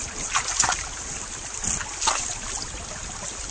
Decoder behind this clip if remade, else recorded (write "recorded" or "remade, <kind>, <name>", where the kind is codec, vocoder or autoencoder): recorded